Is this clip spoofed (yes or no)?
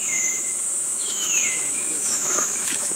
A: yes